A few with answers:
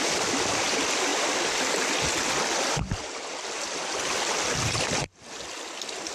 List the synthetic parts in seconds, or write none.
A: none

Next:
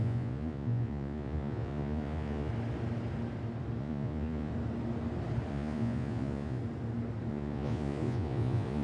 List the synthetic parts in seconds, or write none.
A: 0.0-2.5 (vocoder, Vocos); 3.8-4.5; 5.5-6.6; 7.3-8.8

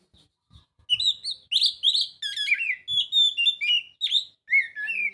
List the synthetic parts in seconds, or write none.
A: none

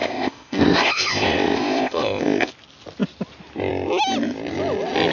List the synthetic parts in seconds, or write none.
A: 0.0-2.5 (codec, ZipCodec)

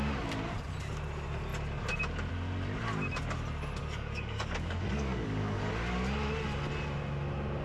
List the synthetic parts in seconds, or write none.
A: 3.8-5.7 (codec, DAC)